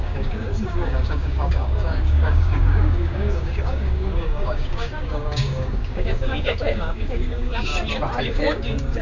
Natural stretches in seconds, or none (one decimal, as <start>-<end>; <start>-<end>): 7.7-8.2

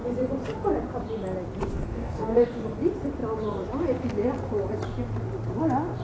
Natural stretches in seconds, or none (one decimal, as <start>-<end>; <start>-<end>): 0.0-1.7; 2.6-6.0